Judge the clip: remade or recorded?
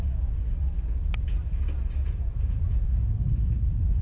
recorded